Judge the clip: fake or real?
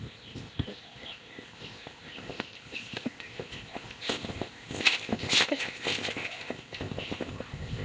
fake